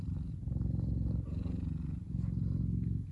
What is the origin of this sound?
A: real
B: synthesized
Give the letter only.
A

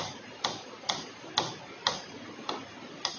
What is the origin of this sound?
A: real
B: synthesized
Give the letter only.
A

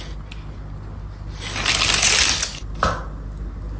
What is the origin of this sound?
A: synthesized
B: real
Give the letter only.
B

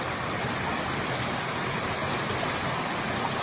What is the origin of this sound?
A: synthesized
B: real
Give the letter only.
B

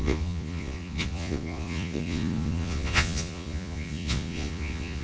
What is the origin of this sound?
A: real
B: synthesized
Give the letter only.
B